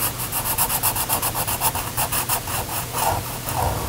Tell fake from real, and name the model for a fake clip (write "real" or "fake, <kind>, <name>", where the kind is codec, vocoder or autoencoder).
real